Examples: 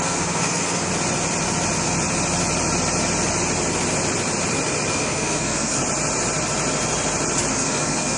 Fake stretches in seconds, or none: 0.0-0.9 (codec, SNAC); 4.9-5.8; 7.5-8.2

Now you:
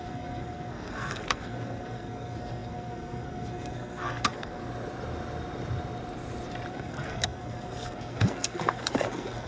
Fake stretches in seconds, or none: 0.0-4.6 (codec, SNAC); 6.7-9.5

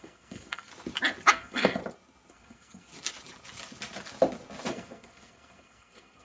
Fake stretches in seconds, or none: 0.0-0.7 (codec, SNAC); 1.3-1.8; 2.3-2.9; 4.7-6.2